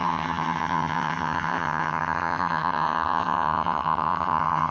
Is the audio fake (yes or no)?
yes